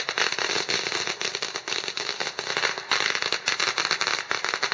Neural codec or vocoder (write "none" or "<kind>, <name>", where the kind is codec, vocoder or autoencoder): none